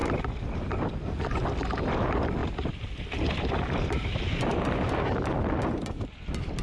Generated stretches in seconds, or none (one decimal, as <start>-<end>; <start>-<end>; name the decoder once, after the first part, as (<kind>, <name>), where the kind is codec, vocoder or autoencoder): 2.4-6.6 (vocoder, BigVGAN v2)